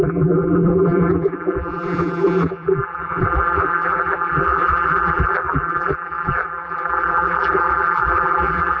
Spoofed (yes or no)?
yes